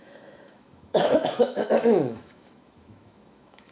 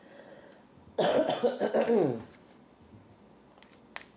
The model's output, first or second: first